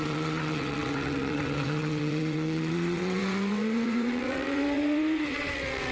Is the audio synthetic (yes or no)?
yes